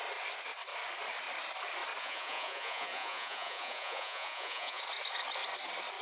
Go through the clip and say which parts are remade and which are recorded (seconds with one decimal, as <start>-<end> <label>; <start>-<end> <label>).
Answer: 0.0-2.0 recorded; 2.0-4.8 remade; 4.8-6.0 recorded